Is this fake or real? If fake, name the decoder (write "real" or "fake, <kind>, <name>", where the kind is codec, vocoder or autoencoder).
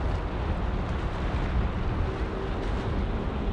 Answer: real